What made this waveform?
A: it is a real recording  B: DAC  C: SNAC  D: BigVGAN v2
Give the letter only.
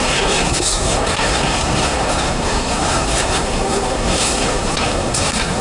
C